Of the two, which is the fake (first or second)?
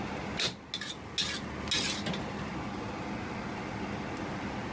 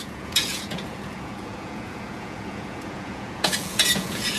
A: second